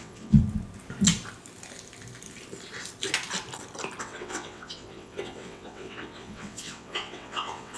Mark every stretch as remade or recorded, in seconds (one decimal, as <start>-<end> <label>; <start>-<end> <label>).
0.0-0.4 remade; 0.4-4.0 recorded; 4.0-7.8 remade